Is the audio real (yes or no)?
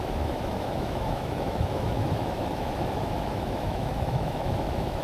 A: no